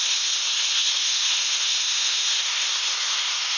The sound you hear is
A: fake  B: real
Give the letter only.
A